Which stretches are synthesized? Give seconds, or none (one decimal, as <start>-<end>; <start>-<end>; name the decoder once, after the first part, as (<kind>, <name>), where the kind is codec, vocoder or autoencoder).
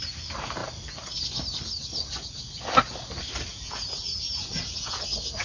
3.5-5.0 (vocoder, Vocos)